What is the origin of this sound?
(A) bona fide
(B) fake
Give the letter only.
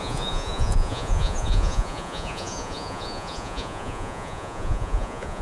B